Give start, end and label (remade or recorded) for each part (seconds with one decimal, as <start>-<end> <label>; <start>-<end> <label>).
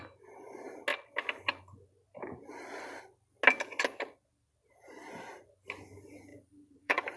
0.0-2.1 recorded; 2.1-3.0 remade; 3.0-6.3 recorded; 6.3-7.2 remade